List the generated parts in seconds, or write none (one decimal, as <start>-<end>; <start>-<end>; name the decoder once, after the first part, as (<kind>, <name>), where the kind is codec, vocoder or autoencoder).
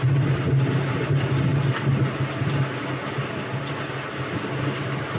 none